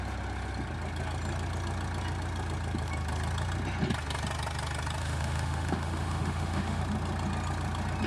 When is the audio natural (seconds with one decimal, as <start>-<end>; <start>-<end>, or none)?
0.0-5.0; 6.8-8.1